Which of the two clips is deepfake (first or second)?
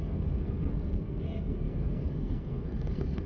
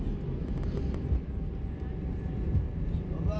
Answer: first